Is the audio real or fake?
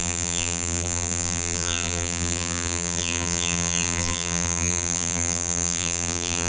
fake